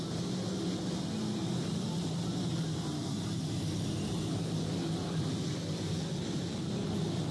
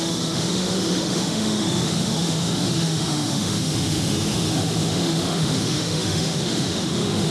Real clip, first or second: first